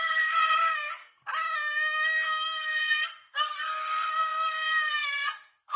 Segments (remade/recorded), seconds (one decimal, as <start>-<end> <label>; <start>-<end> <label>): 0.0-1.3 remade; 1.3-2.6 recorded; 2.6-5.8 remade